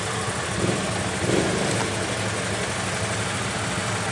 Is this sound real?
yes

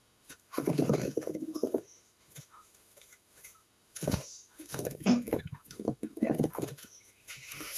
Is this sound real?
no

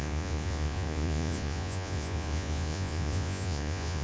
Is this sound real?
no